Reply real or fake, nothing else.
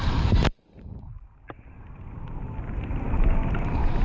real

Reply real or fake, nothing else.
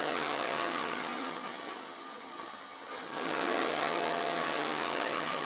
fake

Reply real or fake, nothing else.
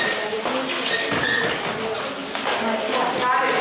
real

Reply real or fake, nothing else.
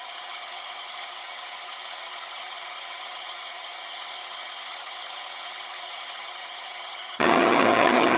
fake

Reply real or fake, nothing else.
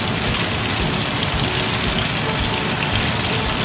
real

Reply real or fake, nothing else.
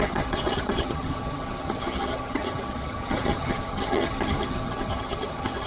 fake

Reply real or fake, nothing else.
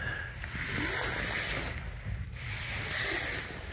real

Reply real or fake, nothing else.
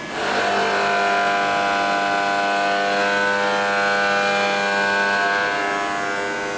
real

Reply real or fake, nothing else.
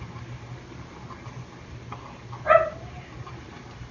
real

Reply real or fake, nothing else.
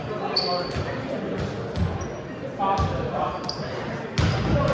real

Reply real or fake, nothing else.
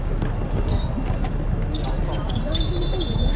real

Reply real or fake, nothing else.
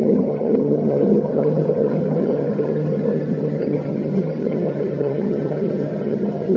fake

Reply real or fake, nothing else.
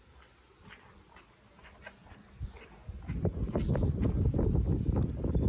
real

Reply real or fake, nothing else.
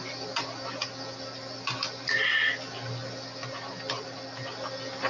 real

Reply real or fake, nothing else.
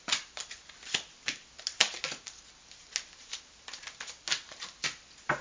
real